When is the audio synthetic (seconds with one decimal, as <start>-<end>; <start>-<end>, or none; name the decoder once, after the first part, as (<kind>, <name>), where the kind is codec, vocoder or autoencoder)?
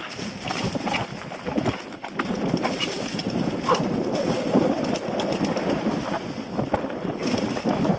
none